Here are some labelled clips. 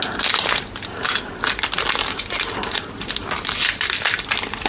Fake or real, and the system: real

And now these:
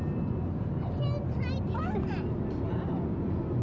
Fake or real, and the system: real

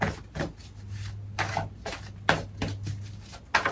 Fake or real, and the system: real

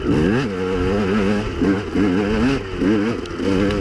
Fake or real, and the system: real